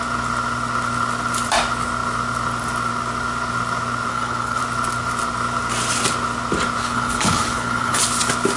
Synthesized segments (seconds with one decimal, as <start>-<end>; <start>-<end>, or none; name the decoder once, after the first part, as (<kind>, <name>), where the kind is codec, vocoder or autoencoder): 4.1-4.6 (codec, HILCodec); 6.8-8.0